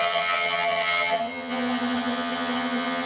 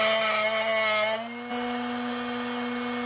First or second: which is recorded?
second